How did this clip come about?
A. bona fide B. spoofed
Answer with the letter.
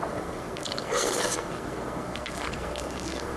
B